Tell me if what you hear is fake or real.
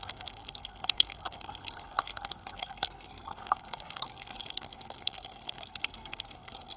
fake